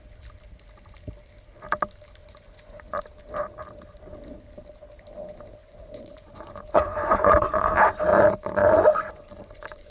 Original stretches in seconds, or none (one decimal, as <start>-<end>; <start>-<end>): 0.0-2.2; 3.0-5.6; 7.7-8.1